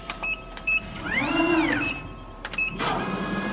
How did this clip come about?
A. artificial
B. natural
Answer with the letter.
A